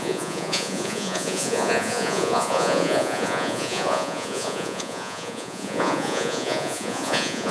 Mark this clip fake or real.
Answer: fake